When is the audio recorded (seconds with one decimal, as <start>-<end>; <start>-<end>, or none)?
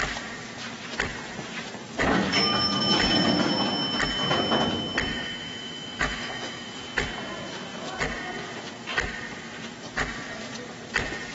0.0-5.1; 6.8-11.3